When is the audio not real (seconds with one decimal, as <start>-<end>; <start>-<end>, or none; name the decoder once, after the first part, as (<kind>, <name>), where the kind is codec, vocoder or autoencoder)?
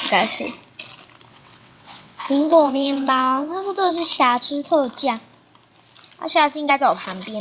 1.3-3.9 (vocoder, WaveNeXt)